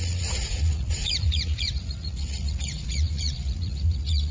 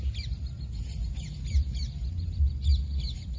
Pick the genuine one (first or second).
second